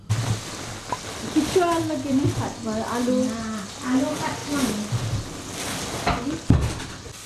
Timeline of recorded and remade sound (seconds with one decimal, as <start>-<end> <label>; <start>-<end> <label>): 0.0-7.3 recorded